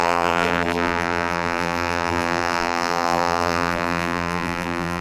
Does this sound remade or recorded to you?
remade